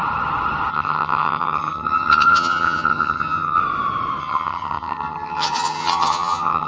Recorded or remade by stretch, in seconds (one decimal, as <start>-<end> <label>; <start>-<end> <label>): 0.0-0.7 recorded; 0.7-3.6 remade; 3.6-4.2 recorded; 4.2-6.7 remade